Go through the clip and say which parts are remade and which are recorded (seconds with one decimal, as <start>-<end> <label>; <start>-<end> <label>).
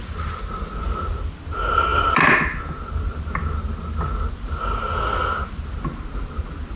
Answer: 0.0-6.8 recorded